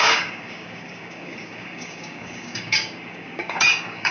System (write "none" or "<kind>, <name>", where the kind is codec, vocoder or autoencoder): codec, DAC